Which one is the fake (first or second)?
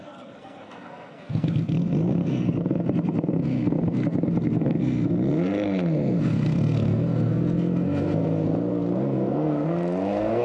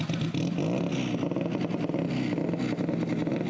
first